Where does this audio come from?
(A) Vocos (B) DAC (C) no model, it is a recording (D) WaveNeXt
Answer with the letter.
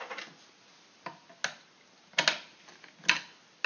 C